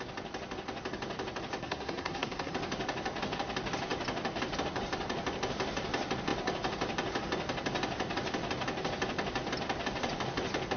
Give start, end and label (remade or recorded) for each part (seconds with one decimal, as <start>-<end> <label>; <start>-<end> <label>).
0.0-1.6 recorded; 1.6-2.5 remade; 2.5-10.8 recorded